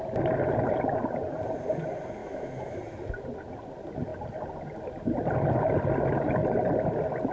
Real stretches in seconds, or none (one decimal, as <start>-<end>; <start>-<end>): 0.0-2.2; 2.8-7.3